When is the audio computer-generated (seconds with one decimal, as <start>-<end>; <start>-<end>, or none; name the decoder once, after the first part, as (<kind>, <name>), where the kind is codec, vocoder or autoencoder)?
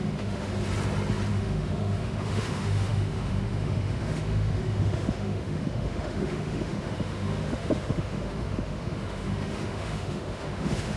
0.0-0.5 (autoencoder, DAC-VAE); 1.3-11.0